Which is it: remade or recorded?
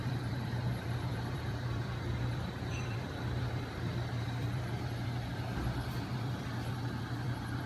remade